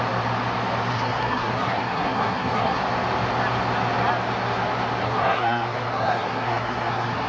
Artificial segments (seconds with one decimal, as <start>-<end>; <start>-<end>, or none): 0.9-2.8; 5.0-7.3